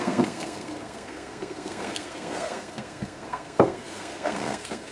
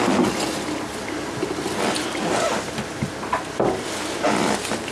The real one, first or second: second